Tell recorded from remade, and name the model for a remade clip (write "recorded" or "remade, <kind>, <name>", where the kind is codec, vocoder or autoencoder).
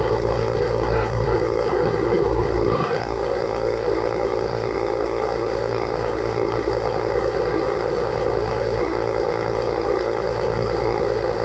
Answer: remade, codec, SNAC